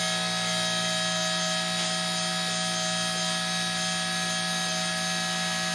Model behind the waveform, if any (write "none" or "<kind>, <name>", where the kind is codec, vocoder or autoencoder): none